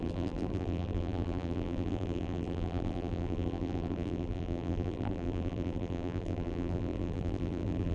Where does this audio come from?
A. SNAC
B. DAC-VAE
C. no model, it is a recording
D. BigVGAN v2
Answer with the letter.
D